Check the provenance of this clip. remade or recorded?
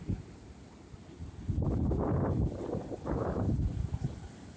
recorded